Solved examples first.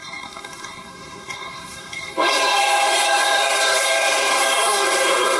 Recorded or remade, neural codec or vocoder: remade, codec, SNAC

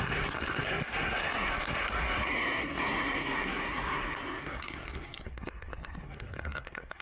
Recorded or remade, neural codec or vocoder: remade, codec, SNAC